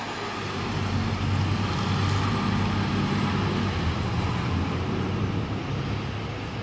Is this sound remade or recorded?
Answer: recorded